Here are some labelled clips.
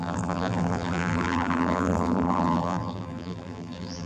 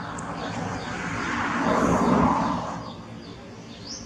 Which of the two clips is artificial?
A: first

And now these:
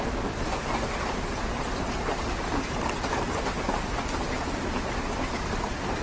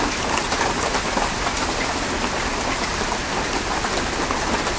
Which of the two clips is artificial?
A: second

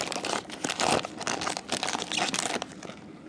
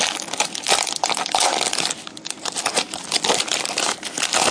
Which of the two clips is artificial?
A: second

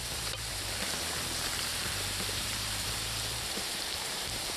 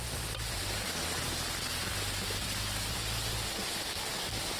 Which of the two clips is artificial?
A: first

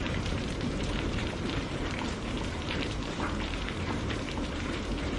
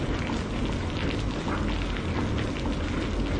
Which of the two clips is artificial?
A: first